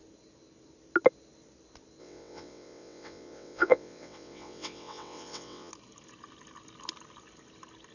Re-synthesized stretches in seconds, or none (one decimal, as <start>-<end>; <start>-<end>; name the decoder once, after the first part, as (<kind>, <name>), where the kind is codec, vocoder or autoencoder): 2.0-5.7 (vocoder, WaveNeXt)